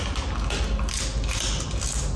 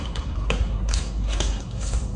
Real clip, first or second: first